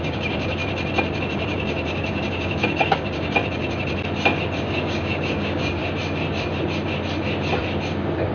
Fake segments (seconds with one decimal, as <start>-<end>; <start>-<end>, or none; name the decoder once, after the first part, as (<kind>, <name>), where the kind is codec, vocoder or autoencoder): 0.0-0.6 (codec, DAC); 1.2-3.4; 4.6-5.8